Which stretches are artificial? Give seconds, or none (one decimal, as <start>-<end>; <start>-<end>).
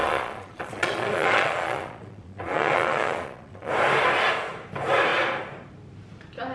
0.0-3.7